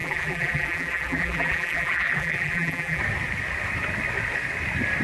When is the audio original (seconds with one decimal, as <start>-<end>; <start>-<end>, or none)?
3.0-5.0